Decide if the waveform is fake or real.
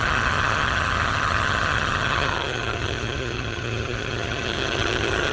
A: fake